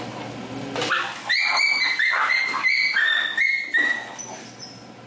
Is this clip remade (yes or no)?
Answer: no